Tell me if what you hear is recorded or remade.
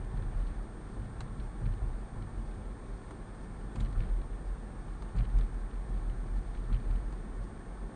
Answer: recorded